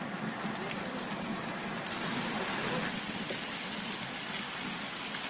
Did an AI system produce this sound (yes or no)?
no